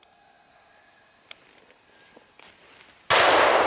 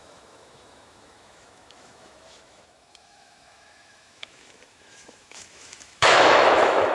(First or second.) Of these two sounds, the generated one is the second